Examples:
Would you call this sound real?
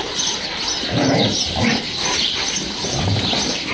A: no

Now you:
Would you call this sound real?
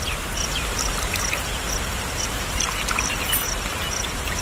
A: yes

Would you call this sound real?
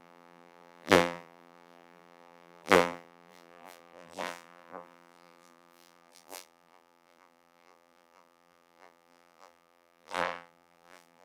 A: no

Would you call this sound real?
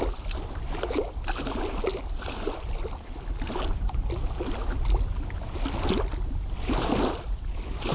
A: yes